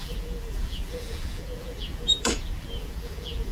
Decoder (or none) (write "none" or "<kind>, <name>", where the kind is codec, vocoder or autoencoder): vocoder, BigVGAN v2